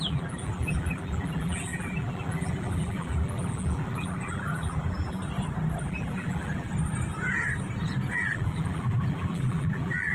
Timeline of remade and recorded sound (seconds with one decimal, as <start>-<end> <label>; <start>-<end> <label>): 0.0-5.2 remade; 5.2-5.8 recorded; 5.8-6.7 remade; 6.7-8.1 recorded; 8.1-10.1 remade